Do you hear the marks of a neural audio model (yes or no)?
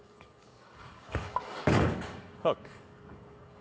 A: yes